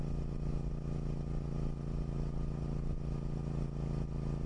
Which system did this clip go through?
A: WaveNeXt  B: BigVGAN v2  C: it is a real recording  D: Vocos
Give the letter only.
C